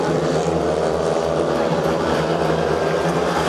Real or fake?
fake